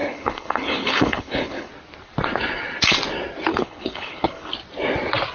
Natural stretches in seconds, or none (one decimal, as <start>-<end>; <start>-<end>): 1.7-3.5; 4.5-5.3

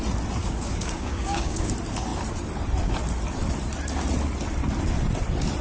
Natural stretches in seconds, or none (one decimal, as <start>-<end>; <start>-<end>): 0.0-0.4; 1.7-5.6

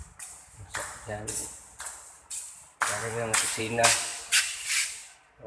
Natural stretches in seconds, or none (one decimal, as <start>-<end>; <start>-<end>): 0.0-5.5

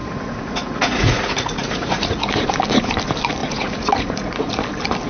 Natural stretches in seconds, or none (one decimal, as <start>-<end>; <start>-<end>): 2.2-3.4; 4.5-5.1

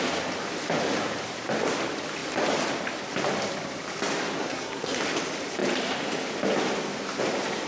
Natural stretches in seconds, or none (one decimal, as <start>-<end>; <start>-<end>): 0.0-4.4; 5.0-7.7

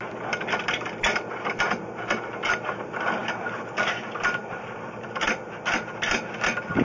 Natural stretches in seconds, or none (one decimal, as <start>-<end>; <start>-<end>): 0.0-4.4; 5.0-6.8

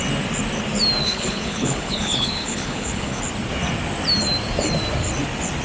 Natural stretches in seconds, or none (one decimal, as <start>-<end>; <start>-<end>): 0.0-1.0; 3.2-5.6